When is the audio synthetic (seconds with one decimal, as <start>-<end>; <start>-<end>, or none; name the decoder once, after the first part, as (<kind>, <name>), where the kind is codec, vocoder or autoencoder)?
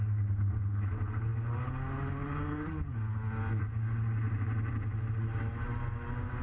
none